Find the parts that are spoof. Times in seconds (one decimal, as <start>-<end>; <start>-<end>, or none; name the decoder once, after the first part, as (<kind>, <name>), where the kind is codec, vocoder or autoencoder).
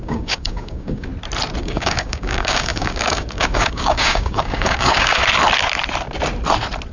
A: 0.0-1.1 (codec, DAC); 1.6-5.2